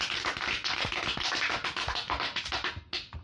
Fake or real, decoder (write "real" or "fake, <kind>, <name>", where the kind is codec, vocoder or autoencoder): real